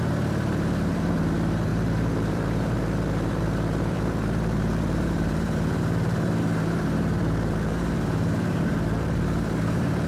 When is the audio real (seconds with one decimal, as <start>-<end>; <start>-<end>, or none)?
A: none